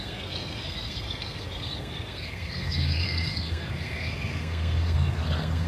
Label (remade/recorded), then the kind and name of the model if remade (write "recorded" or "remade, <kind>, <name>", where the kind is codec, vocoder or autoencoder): remade, codec, SNAC